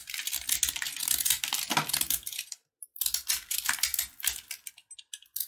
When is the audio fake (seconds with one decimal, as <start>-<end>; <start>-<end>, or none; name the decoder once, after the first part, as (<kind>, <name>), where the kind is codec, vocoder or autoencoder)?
none